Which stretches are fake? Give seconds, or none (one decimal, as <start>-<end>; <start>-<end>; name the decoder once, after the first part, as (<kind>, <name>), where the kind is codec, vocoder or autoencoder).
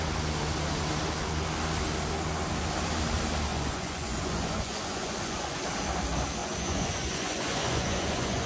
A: 3.5-5.6 (vocoder, Vocos); 6.4-8.5